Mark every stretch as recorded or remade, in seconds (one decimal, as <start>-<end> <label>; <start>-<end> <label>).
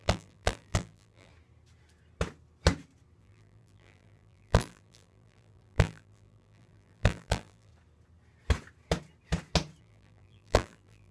0.0-1.3 remade; 1.3-3.2 recorded; 3.2-7.7 remade; 7.7-9.8 recorded; 9.8-11.1 remade